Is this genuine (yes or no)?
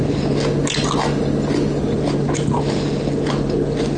yes